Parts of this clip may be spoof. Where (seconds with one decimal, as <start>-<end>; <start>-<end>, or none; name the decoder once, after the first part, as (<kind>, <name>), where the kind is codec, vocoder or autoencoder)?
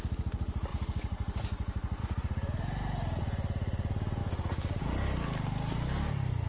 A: none